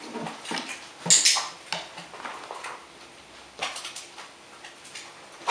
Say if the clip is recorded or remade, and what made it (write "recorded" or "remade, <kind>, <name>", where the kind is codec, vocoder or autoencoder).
recorded